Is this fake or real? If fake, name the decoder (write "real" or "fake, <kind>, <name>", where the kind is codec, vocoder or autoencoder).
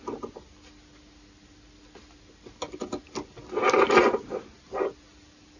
real